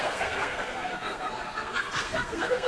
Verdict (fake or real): fake